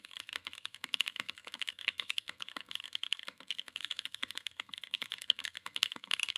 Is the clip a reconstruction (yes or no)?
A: yes